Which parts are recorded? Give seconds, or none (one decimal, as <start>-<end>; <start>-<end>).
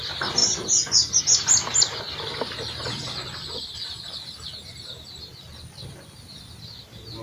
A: 0.0-0.4; 1.2-7.2